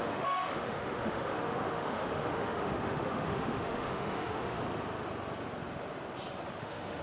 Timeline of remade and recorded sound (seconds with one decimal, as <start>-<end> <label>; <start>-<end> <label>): 0.0-4.6 remade; 4.6-6.6 recorded; 6.6-7.0 remade